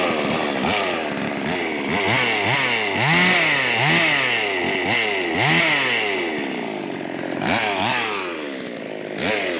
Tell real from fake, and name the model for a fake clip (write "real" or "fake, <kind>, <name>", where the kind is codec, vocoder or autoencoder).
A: real